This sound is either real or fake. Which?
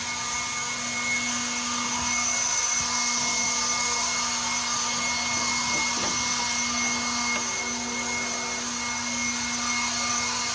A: real